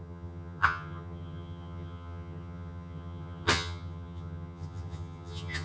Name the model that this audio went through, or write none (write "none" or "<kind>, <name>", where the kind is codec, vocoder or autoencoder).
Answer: vocoder, HiFi-GAN